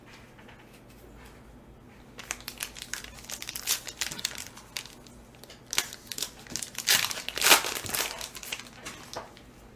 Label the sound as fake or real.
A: real